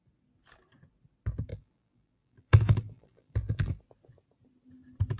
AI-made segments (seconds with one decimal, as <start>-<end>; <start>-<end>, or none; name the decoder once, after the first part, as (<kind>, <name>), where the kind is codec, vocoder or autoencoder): 1.5-3.8 (vocoder, BigVGAN v2)